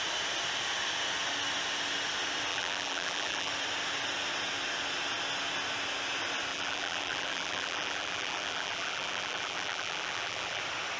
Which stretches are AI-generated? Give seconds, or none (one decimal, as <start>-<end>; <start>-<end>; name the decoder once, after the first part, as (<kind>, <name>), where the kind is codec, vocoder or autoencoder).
2.5-3.5 (vocoder, BigVGAN v2); 6.5-10.6